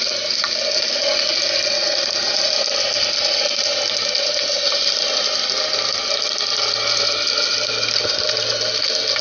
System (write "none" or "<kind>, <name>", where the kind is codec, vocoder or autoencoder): none